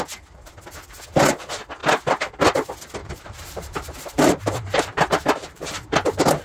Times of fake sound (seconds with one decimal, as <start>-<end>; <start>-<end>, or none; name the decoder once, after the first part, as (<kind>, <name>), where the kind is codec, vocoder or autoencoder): 3.0-6.4 (vocoder, BigVGAN v2)